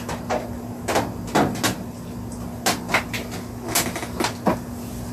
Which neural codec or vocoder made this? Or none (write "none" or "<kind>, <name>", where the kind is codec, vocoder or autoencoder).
none